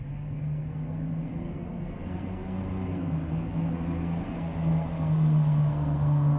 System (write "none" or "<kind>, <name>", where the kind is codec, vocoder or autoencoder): codec, SNAC